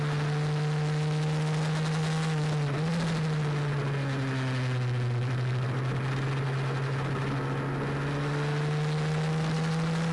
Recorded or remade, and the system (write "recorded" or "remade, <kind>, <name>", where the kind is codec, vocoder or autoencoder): recorded